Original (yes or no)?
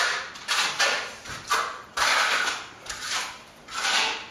no